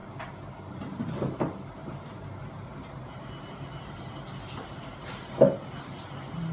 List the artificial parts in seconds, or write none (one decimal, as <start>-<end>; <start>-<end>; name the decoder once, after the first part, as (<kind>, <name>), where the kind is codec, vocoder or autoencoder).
none